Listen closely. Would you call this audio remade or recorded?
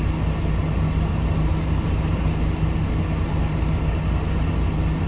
recorded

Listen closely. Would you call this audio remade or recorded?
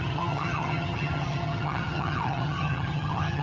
remade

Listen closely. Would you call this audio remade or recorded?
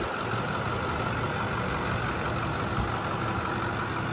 recorded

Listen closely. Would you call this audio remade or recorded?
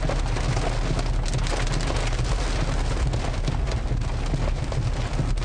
recorded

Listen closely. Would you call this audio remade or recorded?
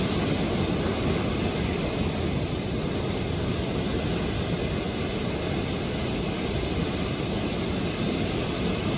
recorded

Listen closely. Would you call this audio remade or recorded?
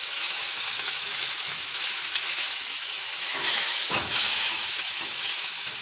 remade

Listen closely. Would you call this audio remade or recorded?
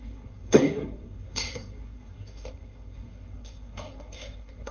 remade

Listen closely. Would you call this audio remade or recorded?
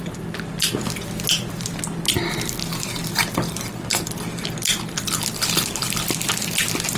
recorded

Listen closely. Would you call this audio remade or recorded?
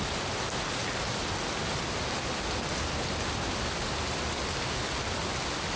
recorded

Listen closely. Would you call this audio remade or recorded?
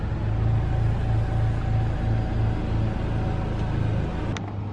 recorded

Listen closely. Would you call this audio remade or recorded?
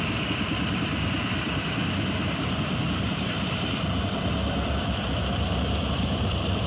remade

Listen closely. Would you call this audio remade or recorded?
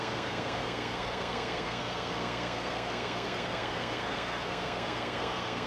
remade